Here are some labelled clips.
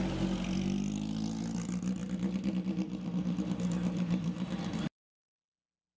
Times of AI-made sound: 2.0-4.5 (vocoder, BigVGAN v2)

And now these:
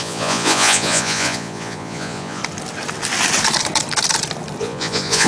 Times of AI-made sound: 0.0-2.4 (vocoder, Vocos); 4.6-5.3

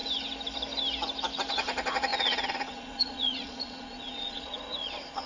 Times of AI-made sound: 1.5-5.3 (vocoder, Vocos)